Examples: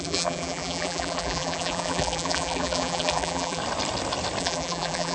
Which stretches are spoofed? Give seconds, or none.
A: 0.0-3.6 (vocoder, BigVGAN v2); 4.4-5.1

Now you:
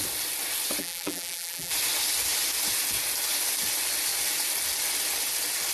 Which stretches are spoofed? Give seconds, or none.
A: 0.8-1.7 (vocoder, BigVGAN v2)

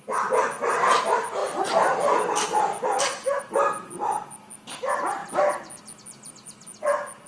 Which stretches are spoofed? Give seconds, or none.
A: none

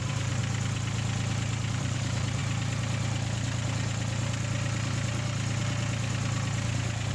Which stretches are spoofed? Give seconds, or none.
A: 0.0-0.4 (vocoder, BigVGAN v2); 1.7-2.4

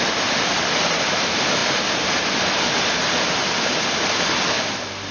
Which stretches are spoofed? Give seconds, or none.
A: none

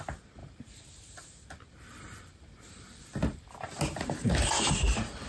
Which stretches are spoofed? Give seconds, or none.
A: 0.4-3.6 (vocoder, BigVGAN v2)

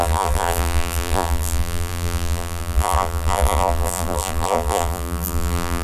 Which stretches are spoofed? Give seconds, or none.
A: 0.0-5.8 (vocoder, BigVGAN v2)